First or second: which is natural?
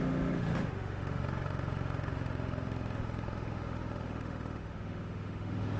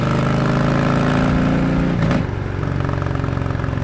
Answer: second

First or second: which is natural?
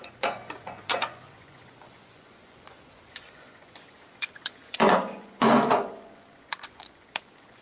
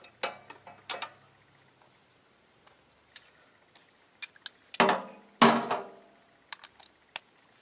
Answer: second